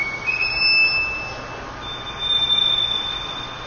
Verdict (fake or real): real